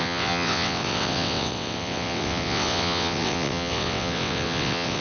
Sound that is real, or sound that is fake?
fake